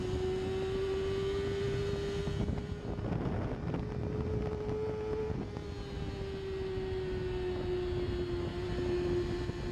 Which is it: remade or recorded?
recorded